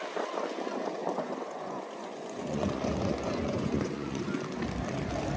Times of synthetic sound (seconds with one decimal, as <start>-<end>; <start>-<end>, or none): 1.0-4.2